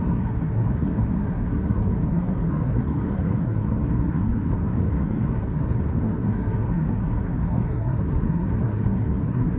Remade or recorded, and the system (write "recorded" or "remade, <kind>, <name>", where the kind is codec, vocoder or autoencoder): remade, codec, SNAC